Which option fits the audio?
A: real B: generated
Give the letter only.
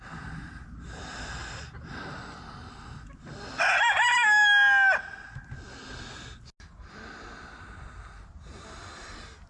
A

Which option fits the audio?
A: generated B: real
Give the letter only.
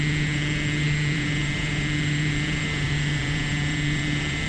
A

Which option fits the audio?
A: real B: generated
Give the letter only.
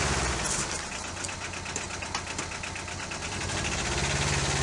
A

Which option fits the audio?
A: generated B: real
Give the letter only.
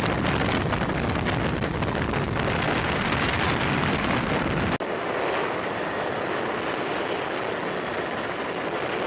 B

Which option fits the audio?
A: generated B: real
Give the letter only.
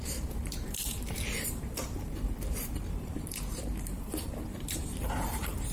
A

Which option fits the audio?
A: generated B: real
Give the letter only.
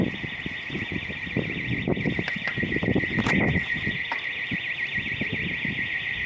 B